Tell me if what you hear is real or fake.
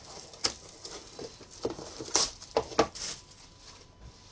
real